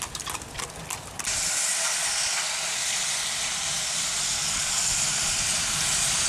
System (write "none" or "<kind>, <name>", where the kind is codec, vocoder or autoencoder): none